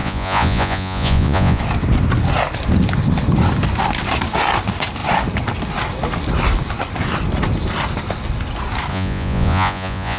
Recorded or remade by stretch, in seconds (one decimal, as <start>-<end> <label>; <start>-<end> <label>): 0.0-1.6 remade; 1.6-8.9 recorded; 8.9-10.2 remade